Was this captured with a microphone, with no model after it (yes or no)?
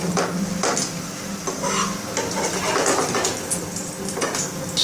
yes